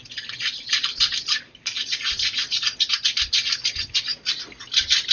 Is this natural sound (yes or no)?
yes